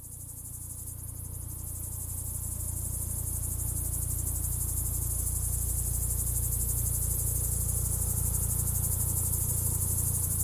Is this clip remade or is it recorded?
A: recorded